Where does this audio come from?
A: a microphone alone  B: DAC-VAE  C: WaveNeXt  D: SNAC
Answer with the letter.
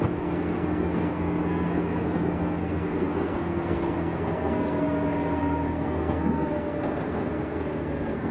D